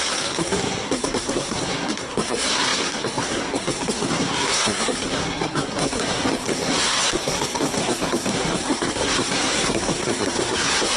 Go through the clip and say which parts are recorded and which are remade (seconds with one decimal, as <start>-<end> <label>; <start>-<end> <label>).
0.0-11.0 remade